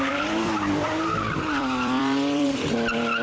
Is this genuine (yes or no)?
no